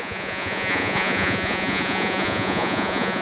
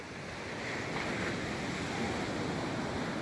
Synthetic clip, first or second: first